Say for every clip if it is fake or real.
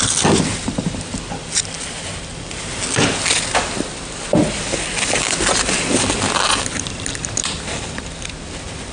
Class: real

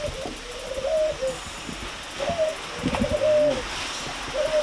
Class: real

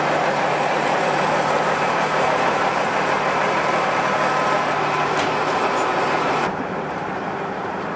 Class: fake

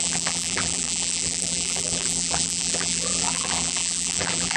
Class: fake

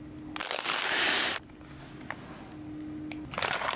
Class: real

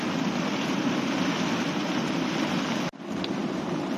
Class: real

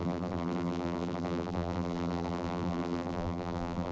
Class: fake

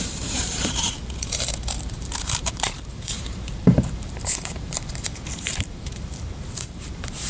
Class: fake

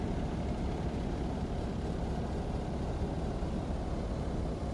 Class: real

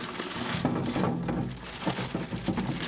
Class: real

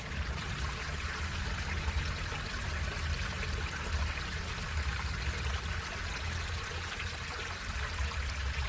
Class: real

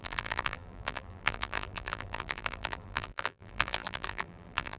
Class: fake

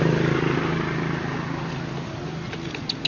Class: real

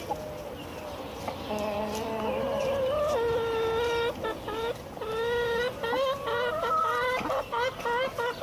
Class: real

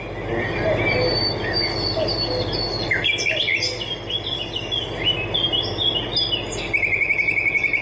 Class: real